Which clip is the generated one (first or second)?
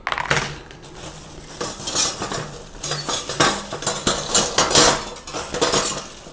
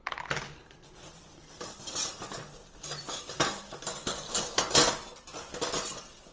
second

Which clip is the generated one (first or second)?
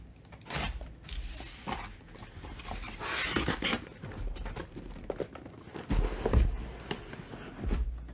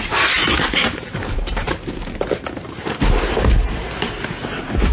second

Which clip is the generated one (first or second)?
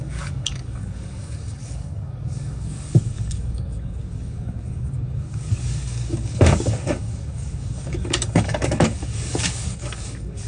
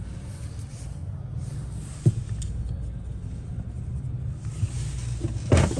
first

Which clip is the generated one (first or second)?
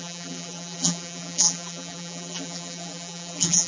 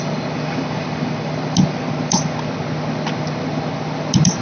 first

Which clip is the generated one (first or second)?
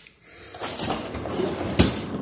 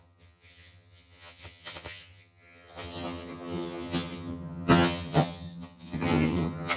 second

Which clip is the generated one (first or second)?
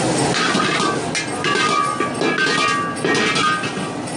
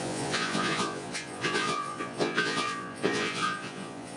second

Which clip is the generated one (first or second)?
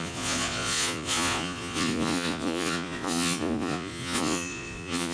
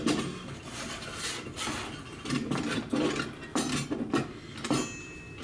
first